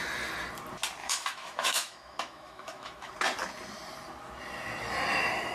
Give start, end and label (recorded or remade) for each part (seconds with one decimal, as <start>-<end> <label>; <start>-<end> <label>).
0.0-1.0 recorded; 1.0-3.1 remade; 3.1-5.5 recorded